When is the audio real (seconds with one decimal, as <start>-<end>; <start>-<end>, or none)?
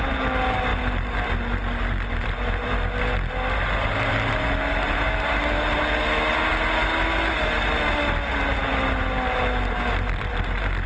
0.0-10.9